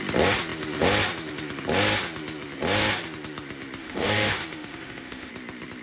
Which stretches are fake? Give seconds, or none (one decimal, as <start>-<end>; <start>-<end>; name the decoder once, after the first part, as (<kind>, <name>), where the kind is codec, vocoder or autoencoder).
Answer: 3.8-5.3 (autoencoder, DAC-VAE)